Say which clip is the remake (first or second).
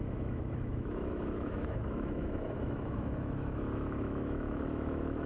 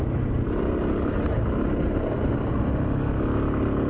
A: first